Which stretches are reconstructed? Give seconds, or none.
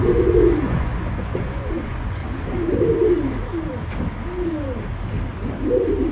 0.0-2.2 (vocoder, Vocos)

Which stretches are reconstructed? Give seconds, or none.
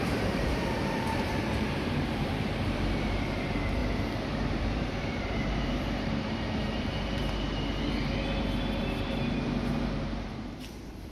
0.0-3.8 (vocoder, BigVGAN v2); 4.5-7.2; 8.8-11.1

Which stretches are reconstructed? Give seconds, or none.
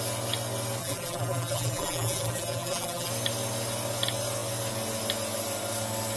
0.8-3.1 (vocoder, BigVGAN v2)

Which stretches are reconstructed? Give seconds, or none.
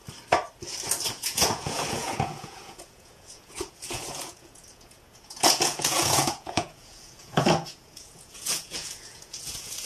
1.1-9.9 (vocoder, Vocos)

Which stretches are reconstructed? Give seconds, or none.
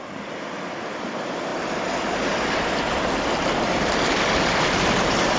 none